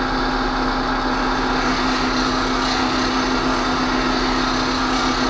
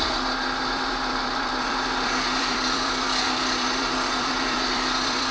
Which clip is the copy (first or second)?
second